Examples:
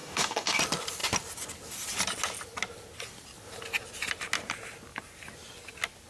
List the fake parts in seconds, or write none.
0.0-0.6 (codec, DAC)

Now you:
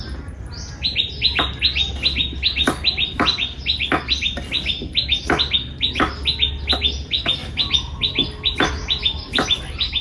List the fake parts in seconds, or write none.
none